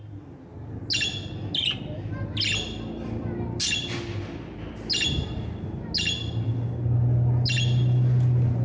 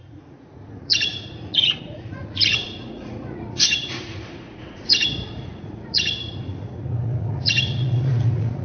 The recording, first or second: first